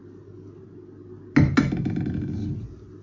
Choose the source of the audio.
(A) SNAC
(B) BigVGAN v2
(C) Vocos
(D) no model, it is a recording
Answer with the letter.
D